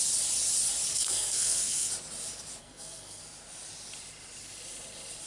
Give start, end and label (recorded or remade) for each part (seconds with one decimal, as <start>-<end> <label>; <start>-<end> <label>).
0.0-0.9 recorded; 0.9-1.9 remade; 1.9-2.6 recorded; 2.6-3.2 remade; 3.2-5.3 recorded